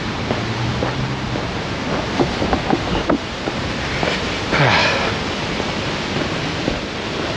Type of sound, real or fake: real